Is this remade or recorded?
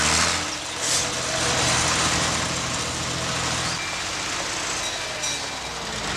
recorded